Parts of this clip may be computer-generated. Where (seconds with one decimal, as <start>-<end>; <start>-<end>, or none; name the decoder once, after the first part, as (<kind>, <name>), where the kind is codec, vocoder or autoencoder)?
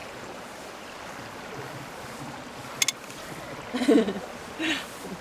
0.0-0.9 (vocoder, BigVGAN v2)